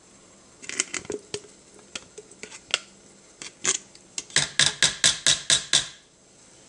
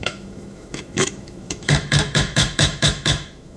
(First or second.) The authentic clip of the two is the first